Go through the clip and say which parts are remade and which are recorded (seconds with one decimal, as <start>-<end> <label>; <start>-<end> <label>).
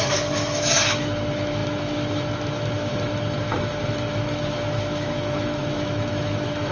0.0-6.7 remade